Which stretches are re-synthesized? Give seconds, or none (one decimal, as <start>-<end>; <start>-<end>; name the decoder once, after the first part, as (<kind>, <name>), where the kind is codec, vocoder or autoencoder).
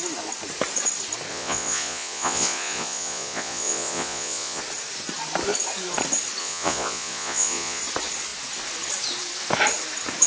1.3-4.6 (vocoder, Vocos); 6.4-7.8